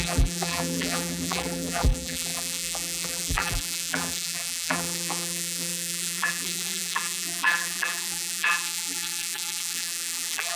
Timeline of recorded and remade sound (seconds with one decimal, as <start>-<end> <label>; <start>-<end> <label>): 0.0-10.6 remade